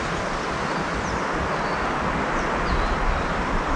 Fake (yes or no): no